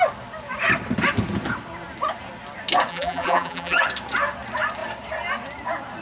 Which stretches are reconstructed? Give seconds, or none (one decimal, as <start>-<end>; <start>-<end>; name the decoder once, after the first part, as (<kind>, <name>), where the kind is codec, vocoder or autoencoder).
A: 2.9-3.8 (vocoder, BigVGAN v2)